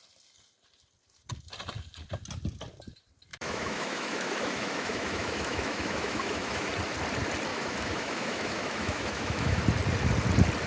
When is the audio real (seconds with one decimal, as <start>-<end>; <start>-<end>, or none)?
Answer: 0.0-3.3; 6.7-7.5; 9.6-10.7